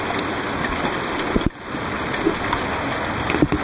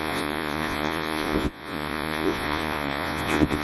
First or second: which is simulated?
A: second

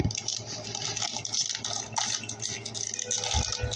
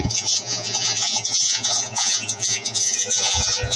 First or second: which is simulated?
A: second